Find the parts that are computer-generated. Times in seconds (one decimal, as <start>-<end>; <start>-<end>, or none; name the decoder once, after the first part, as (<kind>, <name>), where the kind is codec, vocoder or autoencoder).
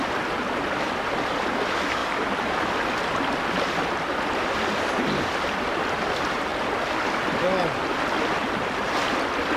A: 0.0-6.5 (vocoder, BigVGAN v2); 8.3-9.6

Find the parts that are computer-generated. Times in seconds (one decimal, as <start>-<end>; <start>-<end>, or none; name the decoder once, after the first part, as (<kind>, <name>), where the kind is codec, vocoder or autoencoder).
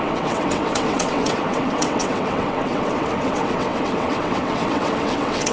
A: 0.0-5.5 (vocoder, WaveNeXt)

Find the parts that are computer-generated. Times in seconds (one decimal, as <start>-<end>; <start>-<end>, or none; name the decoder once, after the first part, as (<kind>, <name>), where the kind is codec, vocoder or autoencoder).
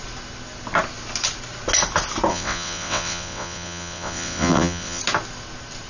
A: 2.3-5.0 (vocoder, WaveNeXt)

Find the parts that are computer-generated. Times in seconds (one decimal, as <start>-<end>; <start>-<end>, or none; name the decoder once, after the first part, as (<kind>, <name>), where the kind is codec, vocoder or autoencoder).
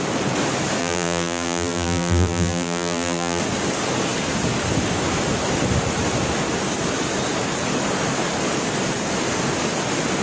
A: 0.8-3.4 (vocoder, BigVGAN v2)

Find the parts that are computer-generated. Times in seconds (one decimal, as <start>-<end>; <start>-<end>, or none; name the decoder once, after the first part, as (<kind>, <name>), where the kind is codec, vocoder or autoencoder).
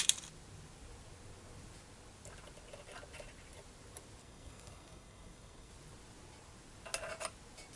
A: 4.2-5.7 (codec, SNAC)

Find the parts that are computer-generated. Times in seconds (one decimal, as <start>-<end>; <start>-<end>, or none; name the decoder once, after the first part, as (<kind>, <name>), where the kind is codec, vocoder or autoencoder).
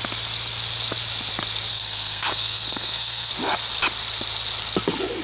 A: 1.7-3.3 (codec, SNAC)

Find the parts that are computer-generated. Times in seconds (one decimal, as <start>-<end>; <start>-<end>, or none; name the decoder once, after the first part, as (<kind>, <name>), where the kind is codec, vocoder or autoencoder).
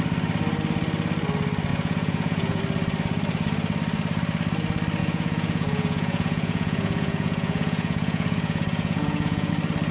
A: 1.7-2.6 (vocoder, Vocos); 5.0-9.5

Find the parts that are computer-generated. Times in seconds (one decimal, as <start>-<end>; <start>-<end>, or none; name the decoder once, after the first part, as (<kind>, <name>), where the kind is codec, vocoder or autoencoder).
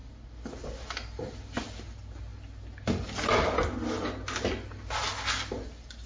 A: none